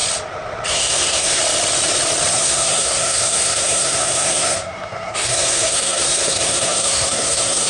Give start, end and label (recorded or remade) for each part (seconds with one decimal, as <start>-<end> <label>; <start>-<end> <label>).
0.0-0.7 recorded; 0.7-1.4 remade; 1.4-2.3 recorded; 2.3-7.7 remade